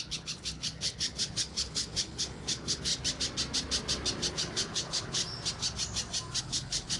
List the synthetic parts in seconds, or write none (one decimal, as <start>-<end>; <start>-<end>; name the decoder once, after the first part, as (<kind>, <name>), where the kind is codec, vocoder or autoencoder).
0.0-2.9 (codec, HILCodec); 4.3-5.2; 6.4-7.0